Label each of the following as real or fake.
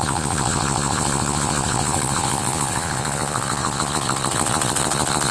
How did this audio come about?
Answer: fake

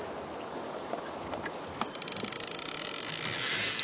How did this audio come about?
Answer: real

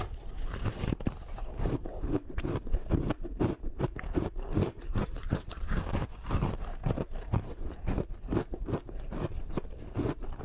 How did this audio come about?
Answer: fake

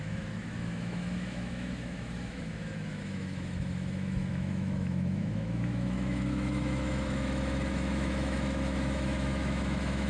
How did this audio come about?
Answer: fake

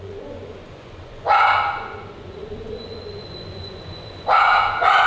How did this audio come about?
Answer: fake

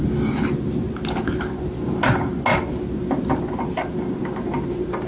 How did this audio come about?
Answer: real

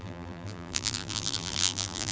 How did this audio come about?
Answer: fake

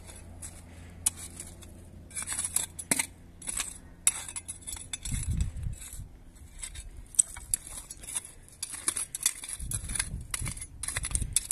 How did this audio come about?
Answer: real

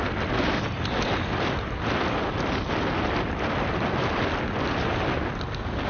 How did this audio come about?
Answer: real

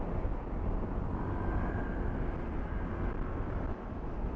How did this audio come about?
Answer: real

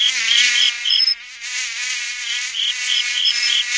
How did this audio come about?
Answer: fake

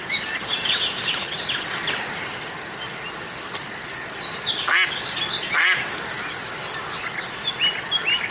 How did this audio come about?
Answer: real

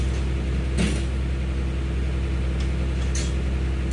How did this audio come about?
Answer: real